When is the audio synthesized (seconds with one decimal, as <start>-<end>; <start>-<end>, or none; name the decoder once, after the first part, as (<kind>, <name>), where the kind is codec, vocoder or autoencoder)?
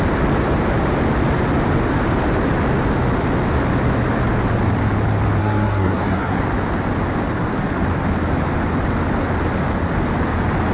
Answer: 5.4-6.4 (codec, SNAC)